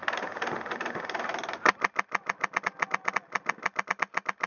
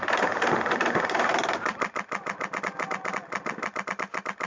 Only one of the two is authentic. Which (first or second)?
first